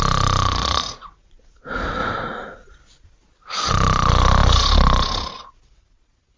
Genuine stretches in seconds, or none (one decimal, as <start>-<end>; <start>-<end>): 0.0-0.6; 1.6-6.4